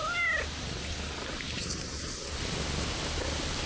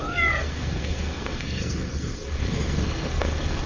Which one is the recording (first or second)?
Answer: first